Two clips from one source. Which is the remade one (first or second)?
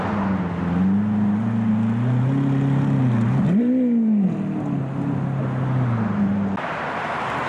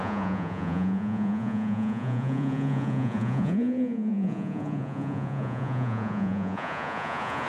second